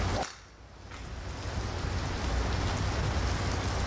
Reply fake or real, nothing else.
real